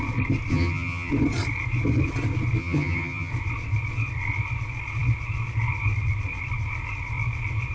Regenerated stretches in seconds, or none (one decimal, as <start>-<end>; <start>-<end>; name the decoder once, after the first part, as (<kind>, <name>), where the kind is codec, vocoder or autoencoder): 0.5-1.1 (vocoder, HiFi-GAN); 2.6-3.3